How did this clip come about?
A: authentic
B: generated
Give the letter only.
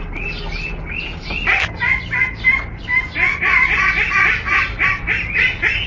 A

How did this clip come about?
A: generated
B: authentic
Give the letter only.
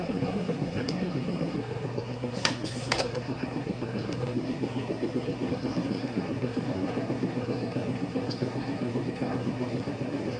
A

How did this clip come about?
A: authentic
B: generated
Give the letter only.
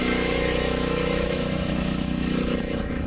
B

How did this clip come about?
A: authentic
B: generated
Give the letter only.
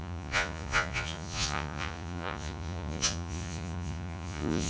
B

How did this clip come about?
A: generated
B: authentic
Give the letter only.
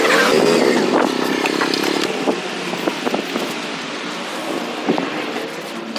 B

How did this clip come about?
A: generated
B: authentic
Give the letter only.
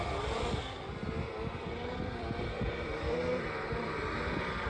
A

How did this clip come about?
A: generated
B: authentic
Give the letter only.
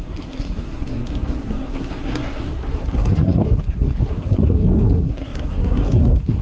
A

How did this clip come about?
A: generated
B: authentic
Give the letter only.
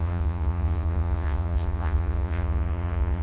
A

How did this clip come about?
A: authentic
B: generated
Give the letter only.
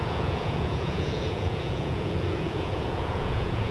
B